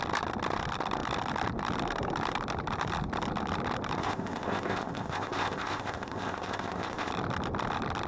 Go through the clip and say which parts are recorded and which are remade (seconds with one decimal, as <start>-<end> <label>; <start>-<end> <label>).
0.0-4.0 recorded; 4.0-7.1 remade; 7.1-8.1 recorded